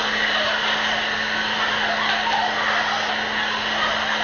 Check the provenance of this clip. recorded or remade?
recorded